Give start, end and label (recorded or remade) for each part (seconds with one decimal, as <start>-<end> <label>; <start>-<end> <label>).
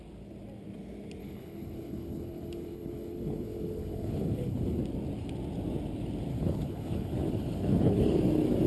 0.0-1.2 recorded; 1.2-4.8 remade; 4.8-6.3 recorded; 6.3-8.2 remade; 8.2-8.7 recorded